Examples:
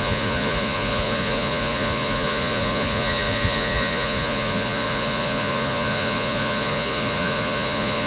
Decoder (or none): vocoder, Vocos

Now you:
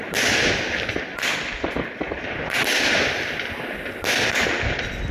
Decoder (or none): none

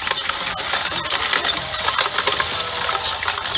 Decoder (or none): none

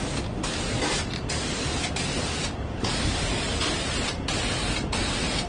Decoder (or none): none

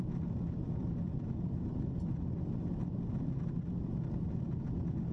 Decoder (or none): none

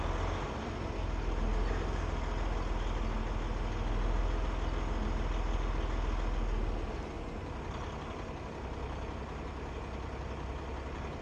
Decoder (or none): none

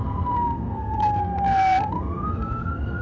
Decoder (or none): codec, SNAC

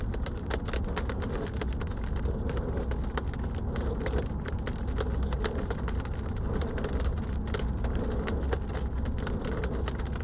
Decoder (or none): none